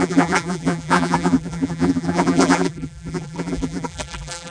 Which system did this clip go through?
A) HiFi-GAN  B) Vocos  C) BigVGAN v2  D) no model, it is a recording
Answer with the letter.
C